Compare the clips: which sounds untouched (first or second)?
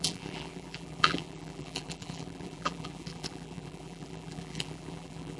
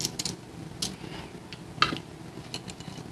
second